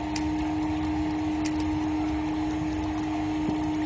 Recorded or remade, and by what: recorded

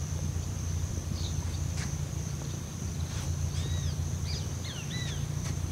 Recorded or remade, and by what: remade, vocoder, BigVGAN v2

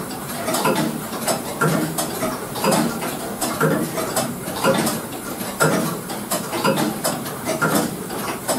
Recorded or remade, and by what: remade, vocoder, BigVGAN v2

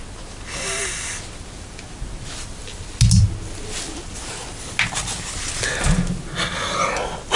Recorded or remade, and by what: recorded